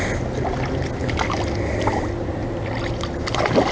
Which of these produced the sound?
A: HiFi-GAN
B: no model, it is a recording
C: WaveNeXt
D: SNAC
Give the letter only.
B